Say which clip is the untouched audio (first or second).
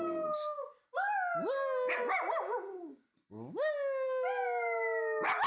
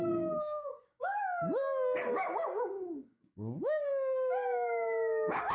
first